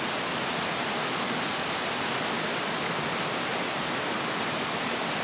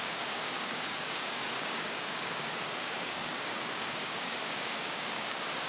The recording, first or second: first